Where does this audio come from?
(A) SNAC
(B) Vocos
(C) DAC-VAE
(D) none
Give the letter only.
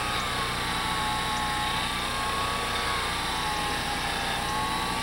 D